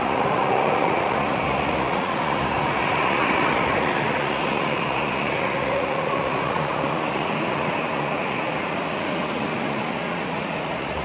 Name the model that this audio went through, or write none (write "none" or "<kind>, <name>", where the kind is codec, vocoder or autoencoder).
vocoder, Vocos